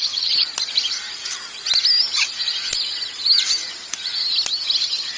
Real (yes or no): yes